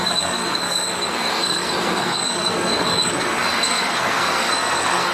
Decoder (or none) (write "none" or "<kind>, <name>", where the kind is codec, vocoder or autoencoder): codec, SNAC